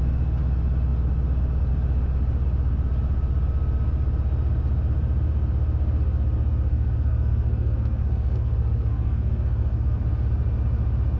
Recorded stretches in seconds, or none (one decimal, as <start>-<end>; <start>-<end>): 0.0-6.7; 10.0-11.2